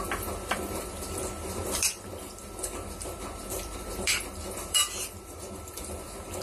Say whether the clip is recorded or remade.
remade